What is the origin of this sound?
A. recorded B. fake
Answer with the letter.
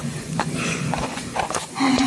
B